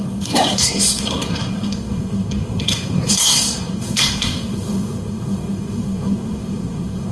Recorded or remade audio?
remade